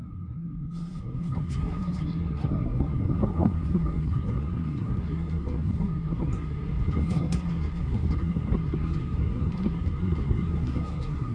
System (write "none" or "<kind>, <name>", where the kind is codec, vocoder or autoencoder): codec, SNAC